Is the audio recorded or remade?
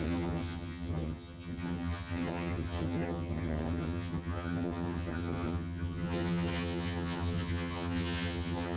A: remade